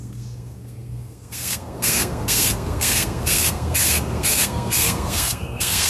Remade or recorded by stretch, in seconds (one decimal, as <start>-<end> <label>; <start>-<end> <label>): 0.0-5.9 remade